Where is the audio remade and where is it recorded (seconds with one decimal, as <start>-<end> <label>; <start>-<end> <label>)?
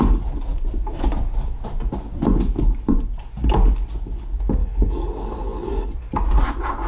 0.0-4.6 recorded; 4.6-6.1 remade; 6.1-6.9 recorded